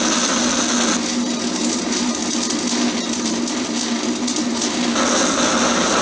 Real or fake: real